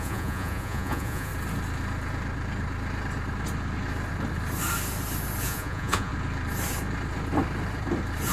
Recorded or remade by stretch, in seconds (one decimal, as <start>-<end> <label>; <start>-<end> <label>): 0.0-1.3 remade; 1.3-5.4 recorded; 5.4-6.1 remade; 6.1-8.3 recorded